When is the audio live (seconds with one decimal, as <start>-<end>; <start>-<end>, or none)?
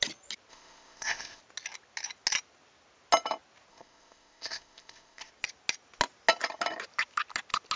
0.0-0.5; 1.4-3.7; 5.3-7.8